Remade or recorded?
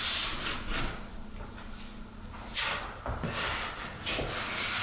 recorded